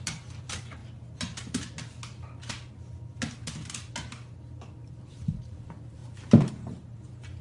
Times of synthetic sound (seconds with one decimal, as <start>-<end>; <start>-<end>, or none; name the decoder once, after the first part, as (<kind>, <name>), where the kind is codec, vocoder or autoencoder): 0.0-0.8 (vocoder, BigVGAN v2); 4.9-7.4